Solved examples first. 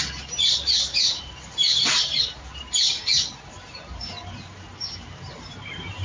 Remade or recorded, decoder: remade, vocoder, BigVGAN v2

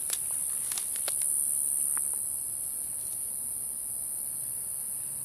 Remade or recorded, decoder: recorded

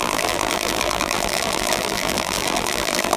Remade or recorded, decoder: remade, vocoder, BigVGAN v2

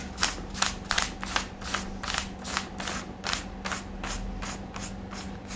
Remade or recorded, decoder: recorded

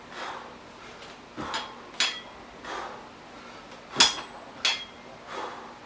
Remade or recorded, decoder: recorded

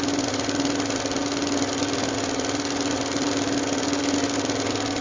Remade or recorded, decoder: recorded